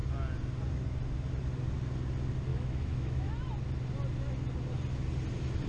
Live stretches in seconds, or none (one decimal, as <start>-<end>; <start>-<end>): 0.0-2.5; 3.3-5.7